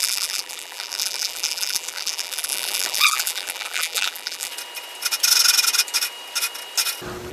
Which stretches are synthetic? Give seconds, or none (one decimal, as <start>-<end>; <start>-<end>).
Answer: 0.0-4.5